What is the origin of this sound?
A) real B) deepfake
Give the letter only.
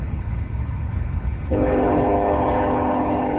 B